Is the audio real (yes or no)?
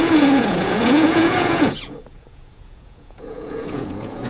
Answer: no